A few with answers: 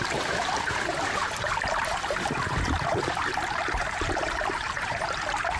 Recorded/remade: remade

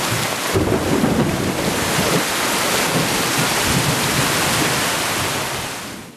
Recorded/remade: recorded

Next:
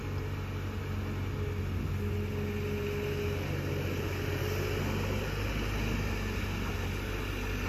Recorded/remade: recorded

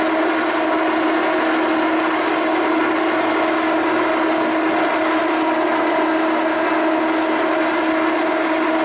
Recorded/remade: recorded